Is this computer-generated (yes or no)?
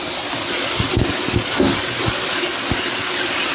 no